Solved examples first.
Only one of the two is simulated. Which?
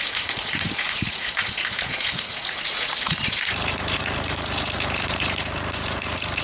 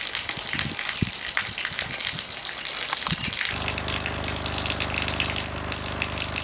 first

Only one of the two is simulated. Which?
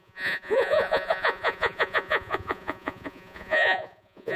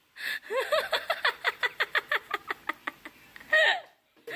first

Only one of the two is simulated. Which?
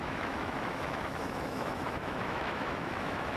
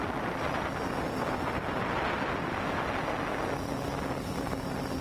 first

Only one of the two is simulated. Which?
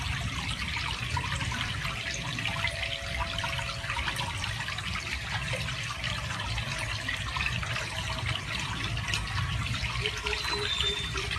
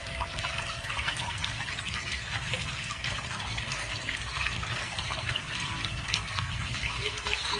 second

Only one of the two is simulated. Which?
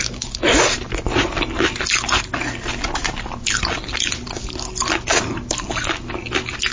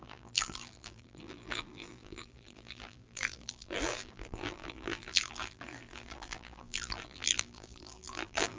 second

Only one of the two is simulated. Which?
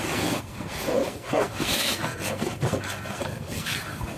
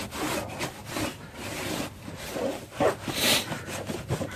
first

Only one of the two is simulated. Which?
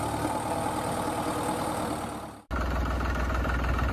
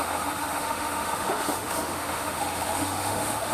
second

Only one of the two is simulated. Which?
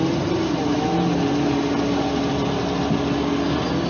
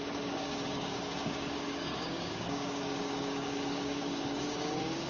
second